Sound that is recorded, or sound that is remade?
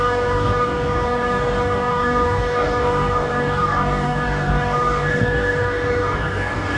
remade